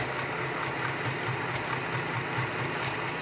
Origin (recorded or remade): recorded